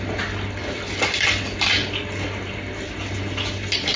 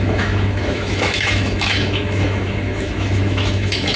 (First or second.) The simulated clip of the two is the second